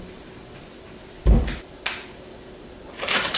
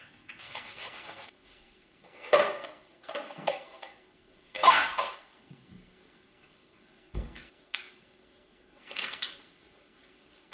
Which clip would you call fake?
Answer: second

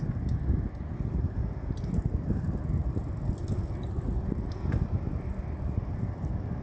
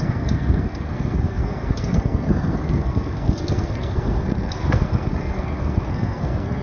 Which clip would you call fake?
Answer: second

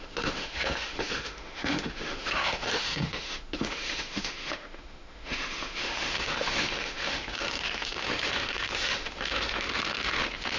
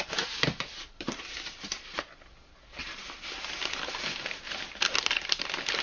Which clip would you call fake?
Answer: first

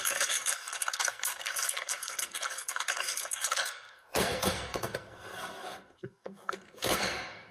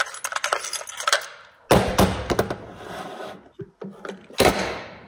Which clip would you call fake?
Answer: first